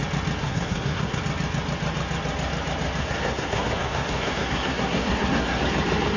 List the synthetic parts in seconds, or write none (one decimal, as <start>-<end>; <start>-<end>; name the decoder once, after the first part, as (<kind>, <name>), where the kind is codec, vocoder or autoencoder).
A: 0.4-1.2 (codec, SNAC); 3.0-5.6

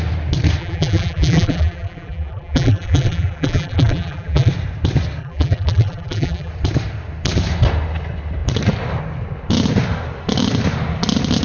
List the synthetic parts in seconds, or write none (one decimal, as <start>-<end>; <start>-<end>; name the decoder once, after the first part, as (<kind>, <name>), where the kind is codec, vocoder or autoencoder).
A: 0.6-4.5 (vocoder, BigVGAN v2); 5.2-6.5